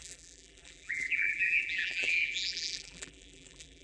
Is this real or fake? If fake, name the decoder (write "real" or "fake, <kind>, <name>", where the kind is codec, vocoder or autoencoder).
fake, vocoder, BigVGAN v2